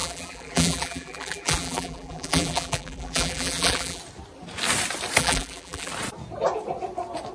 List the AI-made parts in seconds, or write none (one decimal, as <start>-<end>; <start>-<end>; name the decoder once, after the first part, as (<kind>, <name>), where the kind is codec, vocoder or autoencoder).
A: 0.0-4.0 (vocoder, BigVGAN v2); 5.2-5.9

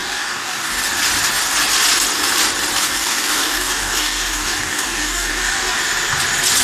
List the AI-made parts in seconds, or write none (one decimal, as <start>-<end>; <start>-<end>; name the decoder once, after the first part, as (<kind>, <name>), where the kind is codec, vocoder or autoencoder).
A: 0.0-0.8 (codec, DAC); 2.8-5.8

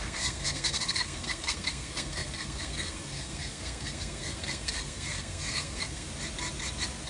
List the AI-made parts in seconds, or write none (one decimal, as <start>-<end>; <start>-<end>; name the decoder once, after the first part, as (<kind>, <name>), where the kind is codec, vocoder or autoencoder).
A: 0.0-6.1 (codec, SNAC)